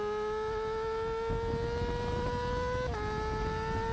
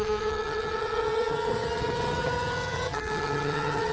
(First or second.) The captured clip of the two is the first